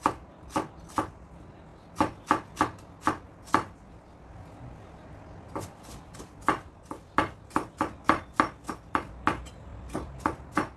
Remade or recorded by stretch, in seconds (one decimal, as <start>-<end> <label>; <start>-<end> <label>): 0.0-10.8 recorded